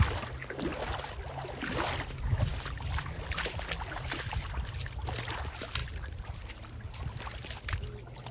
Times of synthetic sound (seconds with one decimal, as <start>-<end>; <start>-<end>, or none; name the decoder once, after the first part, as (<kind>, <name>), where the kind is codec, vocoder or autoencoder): 5.8-7.0 (vocoder, BigVGAN v2)